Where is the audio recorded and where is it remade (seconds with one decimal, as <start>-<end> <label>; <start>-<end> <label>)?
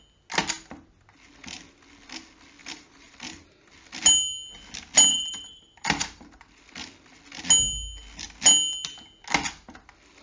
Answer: 0.0-2.6 recorded; 2.6-3.7 remade; 3.7-5.1 recorded; 5.1-6.4 remade; 6.4-10.2 recorded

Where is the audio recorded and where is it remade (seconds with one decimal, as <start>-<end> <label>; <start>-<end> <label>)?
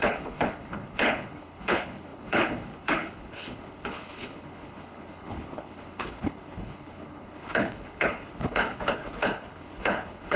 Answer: 0.0-10.4 remade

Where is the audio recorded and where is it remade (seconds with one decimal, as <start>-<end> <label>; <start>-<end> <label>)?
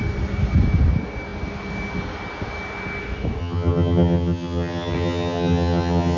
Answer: 0.0-3.4 recorded; 3.4-6.2 remade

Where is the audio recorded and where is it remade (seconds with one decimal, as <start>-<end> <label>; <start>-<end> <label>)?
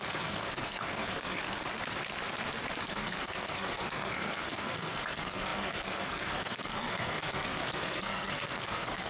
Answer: 0.0-1.4 remade; 1.4-2.8 recorded; 2.8-9.1 remade